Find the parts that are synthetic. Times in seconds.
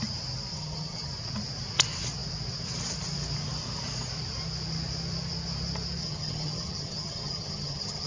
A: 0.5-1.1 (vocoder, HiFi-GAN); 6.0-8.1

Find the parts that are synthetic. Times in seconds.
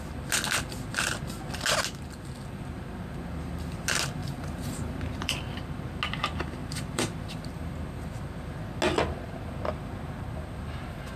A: 4.2-5.3 (vocoder, BigVGAN v2); 6.6-7.5